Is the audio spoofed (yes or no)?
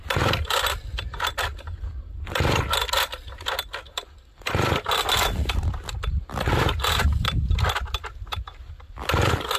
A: no